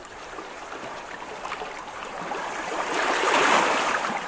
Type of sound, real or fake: fake